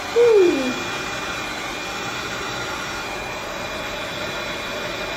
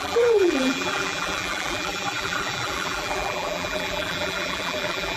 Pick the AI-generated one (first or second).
second